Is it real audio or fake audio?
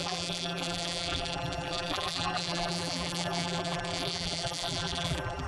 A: fake